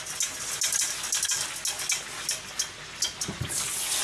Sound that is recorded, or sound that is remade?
recorded